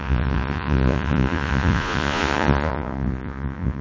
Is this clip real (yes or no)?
no